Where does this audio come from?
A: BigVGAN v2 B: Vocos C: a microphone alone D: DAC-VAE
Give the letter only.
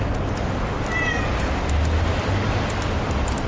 C